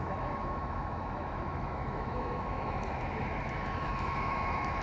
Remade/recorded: remade